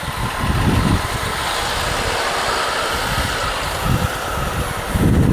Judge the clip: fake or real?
real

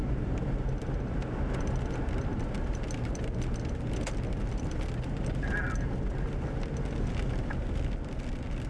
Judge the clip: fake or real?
real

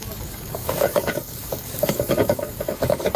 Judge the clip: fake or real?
fake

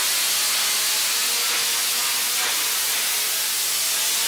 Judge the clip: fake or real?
real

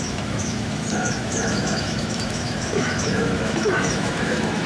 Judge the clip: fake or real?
fake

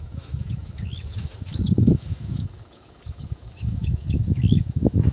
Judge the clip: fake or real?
fake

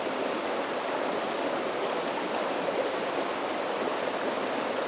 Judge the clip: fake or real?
real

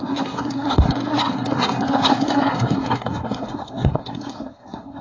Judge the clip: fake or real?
fake